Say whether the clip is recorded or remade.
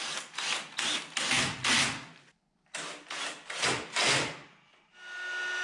recorded